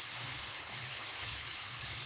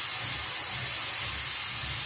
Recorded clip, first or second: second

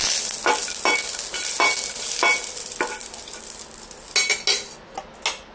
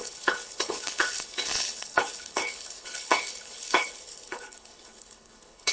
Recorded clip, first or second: first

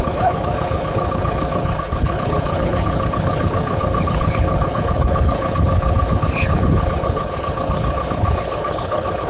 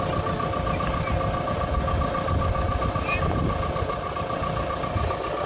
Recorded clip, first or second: second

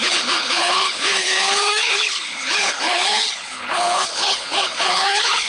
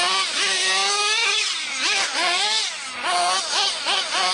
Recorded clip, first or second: second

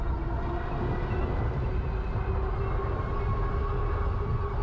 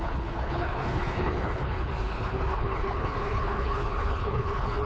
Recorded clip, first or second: first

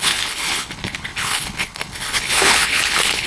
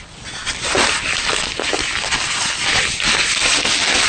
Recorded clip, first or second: second